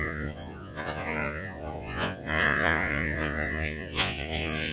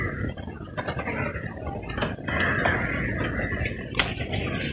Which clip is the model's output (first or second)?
first